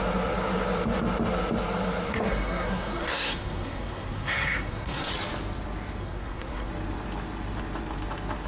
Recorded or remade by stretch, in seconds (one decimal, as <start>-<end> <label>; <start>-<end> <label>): 0.0-2.1 recorded; 2.1-5.1 remade; 5.1-6.0 recorded; 6.0-6.7 remade; 6.7-8.5 recorded